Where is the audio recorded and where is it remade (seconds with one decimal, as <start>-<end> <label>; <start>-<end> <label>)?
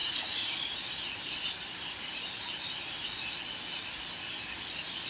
0.0-3.1 remade; 3.1-5.1 recorded